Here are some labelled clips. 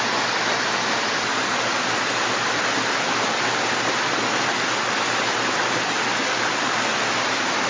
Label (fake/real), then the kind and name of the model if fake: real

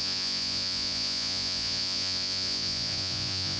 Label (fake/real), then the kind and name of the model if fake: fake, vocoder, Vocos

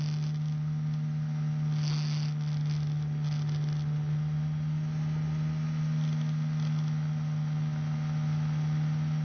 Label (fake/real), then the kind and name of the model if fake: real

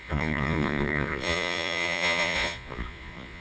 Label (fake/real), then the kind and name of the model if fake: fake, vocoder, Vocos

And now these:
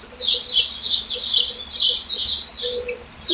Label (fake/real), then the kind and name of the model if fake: real